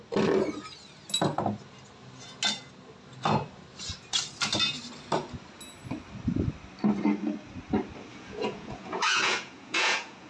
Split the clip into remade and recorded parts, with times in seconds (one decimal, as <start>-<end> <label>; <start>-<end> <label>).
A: 0.0-8.1 recorded; 8.1-10.3 remade